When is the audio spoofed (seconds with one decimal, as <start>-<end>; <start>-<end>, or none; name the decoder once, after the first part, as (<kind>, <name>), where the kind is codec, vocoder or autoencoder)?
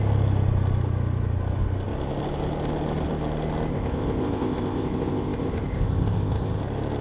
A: 3.7-6.6 (codec, ZipCodec)